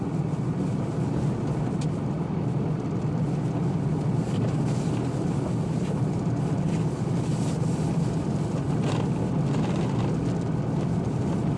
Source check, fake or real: real